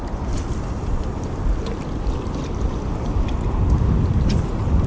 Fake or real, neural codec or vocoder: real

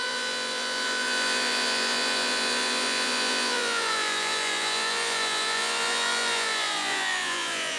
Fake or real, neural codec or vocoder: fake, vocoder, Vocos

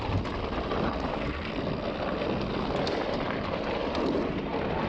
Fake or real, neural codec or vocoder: real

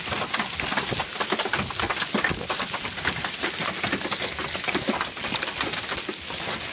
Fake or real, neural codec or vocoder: real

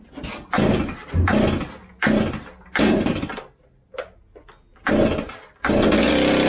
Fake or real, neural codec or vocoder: real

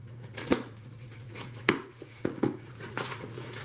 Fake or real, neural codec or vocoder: fake, vocoder, Vocos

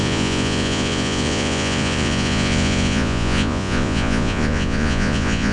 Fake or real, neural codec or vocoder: fake, vocoder, Vocos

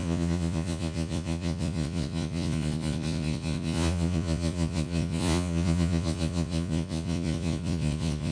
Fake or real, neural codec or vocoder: fake, vocoder, Vocos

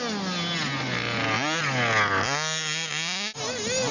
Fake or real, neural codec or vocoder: real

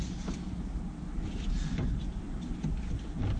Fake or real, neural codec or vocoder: real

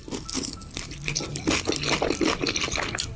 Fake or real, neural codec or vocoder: real